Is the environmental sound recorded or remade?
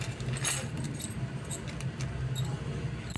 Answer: recorded